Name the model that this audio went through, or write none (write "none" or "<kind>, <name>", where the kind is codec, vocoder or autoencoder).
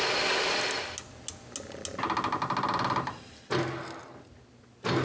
none